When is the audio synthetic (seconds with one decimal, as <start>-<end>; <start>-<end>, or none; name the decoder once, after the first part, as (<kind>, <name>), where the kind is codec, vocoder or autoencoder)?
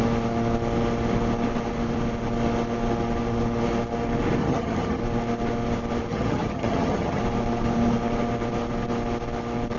4.4-5.0 (vocoder, HiFi-GAN); 6.1-7.2